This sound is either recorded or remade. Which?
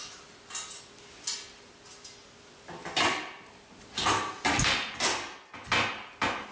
recorded